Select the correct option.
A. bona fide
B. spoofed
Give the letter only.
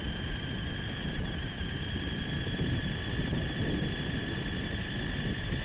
A